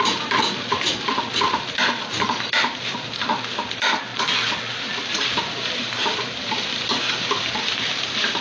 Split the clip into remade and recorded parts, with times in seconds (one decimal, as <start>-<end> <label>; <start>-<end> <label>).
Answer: 0.0-4.1 remade; 4.1-4.7 recorded; 4.7-8.4 remade

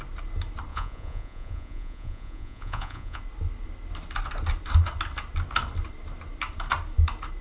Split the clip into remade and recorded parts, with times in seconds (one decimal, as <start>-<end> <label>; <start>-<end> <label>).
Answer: 0.0-0.7 recorded; 0.7-3.2 remade; 3.2-7.4 recorded

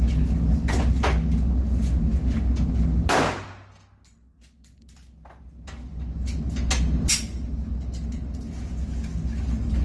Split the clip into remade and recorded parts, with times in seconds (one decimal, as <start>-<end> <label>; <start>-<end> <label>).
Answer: 0.0-9.8 recorded

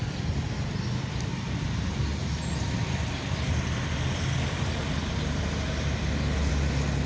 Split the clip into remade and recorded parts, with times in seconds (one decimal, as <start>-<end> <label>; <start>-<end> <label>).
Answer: 0.0-7.1 recorded

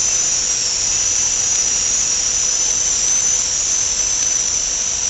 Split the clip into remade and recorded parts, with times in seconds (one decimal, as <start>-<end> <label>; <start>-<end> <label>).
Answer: 0.0-5.1 recorded

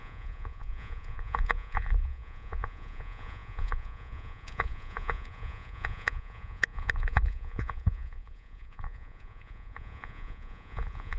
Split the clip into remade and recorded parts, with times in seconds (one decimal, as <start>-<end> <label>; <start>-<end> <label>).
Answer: 0.0-11.2 remade